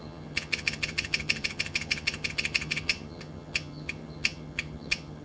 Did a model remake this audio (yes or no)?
yes